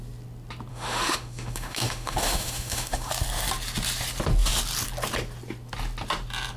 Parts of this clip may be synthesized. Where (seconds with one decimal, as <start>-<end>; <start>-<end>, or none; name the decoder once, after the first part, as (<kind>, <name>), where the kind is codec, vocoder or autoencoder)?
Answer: 0.7-3.1 (autoencoder, DAC-VAE)